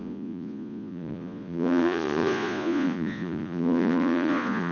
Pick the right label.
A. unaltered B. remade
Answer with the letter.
B